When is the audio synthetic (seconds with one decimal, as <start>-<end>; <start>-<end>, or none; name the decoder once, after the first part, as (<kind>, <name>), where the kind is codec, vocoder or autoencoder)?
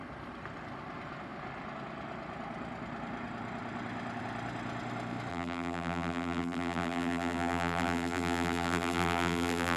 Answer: 5.3-9.8 (vocoder, BigVGAN v2)